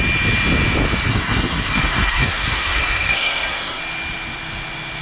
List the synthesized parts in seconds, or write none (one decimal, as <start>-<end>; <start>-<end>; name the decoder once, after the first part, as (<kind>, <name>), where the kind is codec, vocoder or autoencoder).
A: 1.1-3.8 (codec, SNAC)